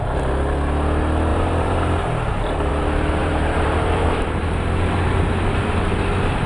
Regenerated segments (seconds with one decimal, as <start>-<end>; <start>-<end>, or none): 1.3-2.7; 3.2-6.5